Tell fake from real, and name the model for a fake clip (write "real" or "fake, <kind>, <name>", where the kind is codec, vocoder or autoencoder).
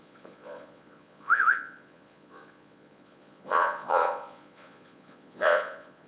fake, vocoder, Vocos